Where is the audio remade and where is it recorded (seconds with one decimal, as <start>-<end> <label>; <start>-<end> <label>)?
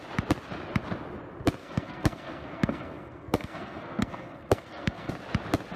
0.0-1.6 recorded; 1.6-5.1 remade; 5.1-5.8 recorded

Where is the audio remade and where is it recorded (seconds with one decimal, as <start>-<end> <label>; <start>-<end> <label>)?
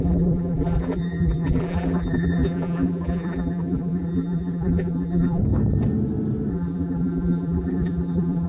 0.0-5.4 remade; 5.4-6.5 recorded; 6.5-8.5 remade